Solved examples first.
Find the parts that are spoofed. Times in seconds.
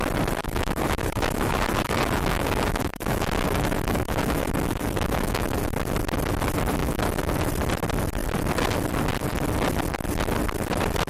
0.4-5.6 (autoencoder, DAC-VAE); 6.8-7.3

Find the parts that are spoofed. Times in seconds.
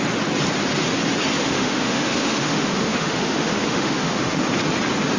1.4-4.5 (autoencoder, DAC-VAE)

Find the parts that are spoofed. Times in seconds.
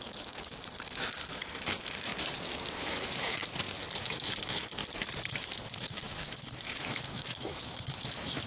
0.0-2.1 (autoencoder, DAC-VAE); 2.8-3.4; 4.0-4.8; 5.3-8.5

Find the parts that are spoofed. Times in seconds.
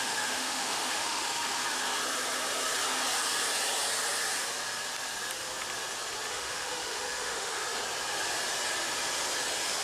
0.0-1.6 (autoencoder, DAC-VAE); 6.3-7.6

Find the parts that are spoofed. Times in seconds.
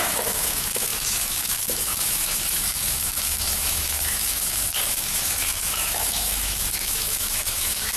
0.0-8.0 (autoencoder, DAC-VAE)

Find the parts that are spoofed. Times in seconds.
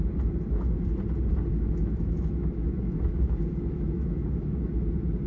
1.5-4.7 (autoencoder, DAC-VAE)